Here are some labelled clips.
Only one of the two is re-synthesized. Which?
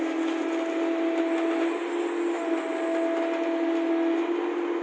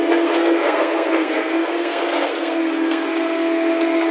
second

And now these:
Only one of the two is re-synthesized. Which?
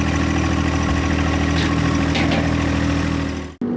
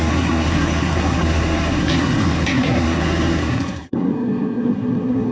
second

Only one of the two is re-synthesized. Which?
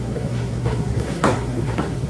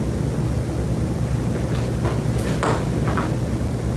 first